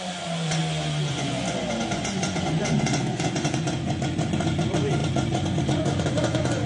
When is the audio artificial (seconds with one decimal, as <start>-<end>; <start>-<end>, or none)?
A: 0.0-0.6; 1.1-6.7